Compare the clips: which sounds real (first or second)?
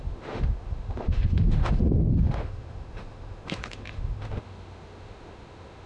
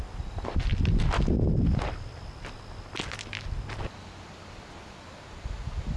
second